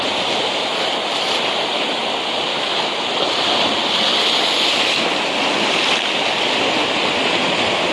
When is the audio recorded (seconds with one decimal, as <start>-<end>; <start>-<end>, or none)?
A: 0.0-2.5; 3.1-7.9